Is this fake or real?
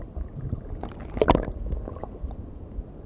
real